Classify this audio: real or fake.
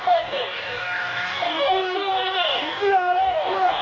fake